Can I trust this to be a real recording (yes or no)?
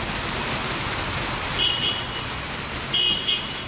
yes